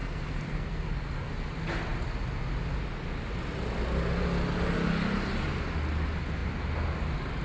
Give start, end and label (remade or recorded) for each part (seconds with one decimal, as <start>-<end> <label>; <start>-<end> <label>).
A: 0.0-1.3 remade; 1.3-7.4 recorded